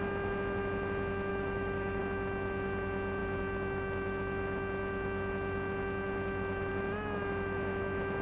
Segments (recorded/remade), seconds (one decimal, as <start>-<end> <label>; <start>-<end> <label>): 0.0-1.3 recorded; 1.3-2.0 remade; 2.0-8.2 recorded